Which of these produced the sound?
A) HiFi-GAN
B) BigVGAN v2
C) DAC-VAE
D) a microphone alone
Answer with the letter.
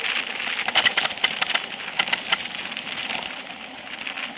D